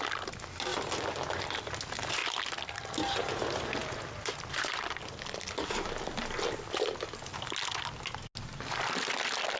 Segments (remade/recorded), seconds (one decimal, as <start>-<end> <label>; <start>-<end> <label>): 0.0-0.7 recorded; 0.7-1.6 remade; 1.6-2.2 recorded; 2.2-2.8 remade; 2.8-3.8 recorded; 3.8-4.8 remade; 4.8-9.6 recorded